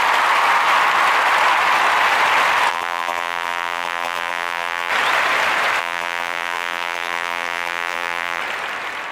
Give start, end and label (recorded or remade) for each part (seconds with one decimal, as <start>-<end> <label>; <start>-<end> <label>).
0.0-2.7 recorded; 2.7-4.9 remade; 4.9-5.8 recorded; 5.8-8.4 remade; 8.4-9.1 recorded